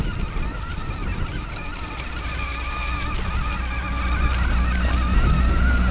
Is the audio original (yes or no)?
yes